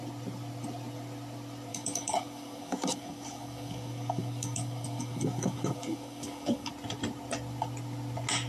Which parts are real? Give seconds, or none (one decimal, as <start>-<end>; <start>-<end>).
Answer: 0.0-1.7; 6.7-8.5